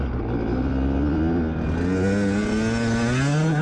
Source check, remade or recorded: recorded